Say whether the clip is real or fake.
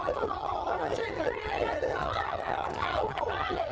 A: fake